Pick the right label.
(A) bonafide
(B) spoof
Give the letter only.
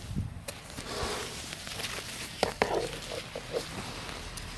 A